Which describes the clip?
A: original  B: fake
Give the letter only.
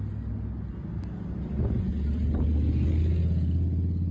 A